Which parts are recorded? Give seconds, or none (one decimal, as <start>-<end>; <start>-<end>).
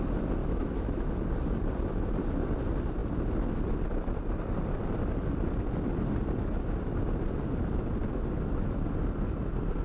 0.0-0.4; 1.1-9.8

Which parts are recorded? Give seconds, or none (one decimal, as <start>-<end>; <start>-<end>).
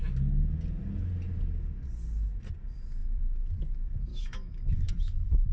0.0-4.1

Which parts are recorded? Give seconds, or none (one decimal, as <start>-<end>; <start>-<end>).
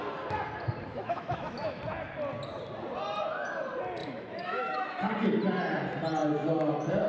0.0-0.9; 1.8-4.0; 5.1-7.1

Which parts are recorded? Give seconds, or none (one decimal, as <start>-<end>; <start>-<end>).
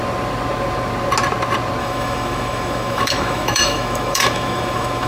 0.0-1.8